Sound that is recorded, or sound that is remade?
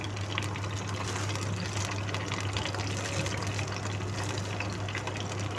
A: recorded